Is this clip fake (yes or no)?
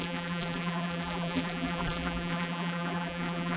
yes